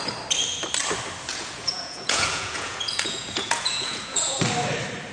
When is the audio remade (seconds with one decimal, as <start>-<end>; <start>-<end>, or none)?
1.3-4.4